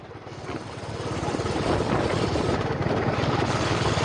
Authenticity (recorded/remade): recorded